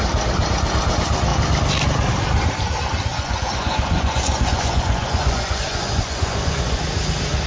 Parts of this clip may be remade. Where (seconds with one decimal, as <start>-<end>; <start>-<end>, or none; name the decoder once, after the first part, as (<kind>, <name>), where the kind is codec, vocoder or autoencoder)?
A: 3.1-6.8 (vocoder, Vocos)